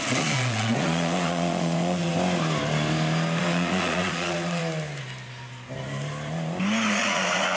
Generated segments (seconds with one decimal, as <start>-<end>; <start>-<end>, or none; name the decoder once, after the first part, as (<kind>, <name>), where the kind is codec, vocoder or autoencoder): 0.0-2.1 (vocoder, Vocos); 3.4-4.6; 6.9-7.6